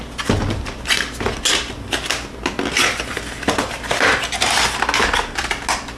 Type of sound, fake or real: real